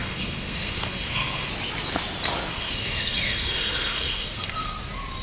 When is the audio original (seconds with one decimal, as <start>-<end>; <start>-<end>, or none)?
1.5-2.5; 4.7-5.2

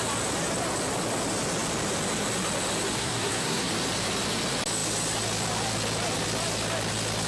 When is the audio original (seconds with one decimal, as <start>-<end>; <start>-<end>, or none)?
0.0-3.0; 3.7-7.3

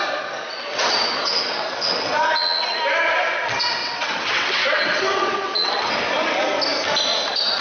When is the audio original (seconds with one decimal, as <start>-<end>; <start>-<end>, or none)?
0.0-0.7; 2.8-3.8; 5.9-7.6

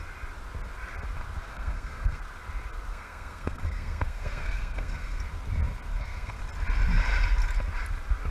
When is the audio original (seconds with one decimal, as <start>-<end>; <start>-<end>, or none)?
0.0-1.5; 2.2-2.9; 5.2-5.9; 6.4-8.3